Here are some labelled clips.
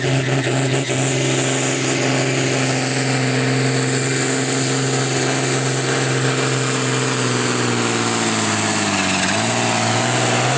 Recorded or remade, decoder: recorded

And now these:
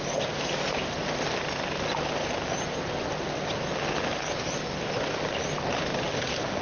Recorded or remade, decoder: recorded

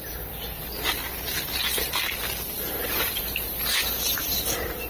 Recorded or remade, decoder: recorded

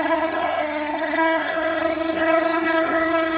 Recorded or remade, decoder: remade, codec, SNAC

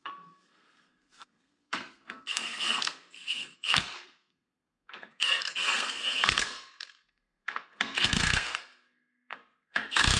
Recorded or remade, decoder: remade, codec, SNAC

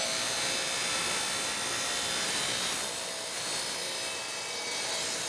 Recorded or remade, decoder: recorded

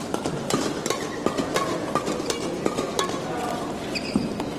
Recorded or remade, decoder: recorded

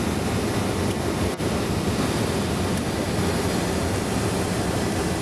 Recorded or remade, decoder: recorded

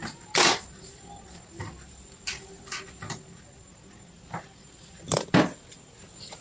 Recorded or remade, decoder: recorded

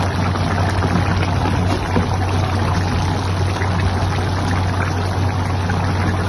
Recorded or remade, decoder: recorded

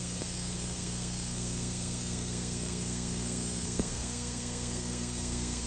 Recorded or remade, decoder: remade, codec, SNAC